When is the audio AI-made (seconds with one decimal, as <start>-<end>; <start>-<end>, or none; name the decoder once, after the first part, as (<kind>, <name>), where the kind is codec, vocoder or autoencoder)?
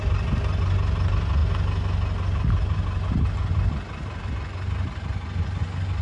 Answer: none